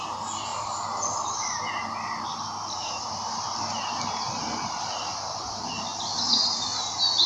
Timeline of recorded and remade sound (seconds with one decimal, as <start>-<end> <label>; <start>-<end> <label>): 0.0-7.3 recorded